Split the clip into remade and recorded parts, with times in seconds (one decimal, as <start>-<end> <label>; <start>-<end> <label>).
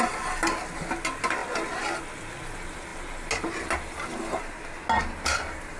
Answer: 0.0-5.8 recorded